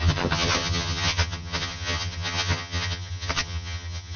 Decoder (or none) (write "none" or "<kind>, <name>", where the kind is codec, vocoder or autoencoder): vocoder, HiFi-GAN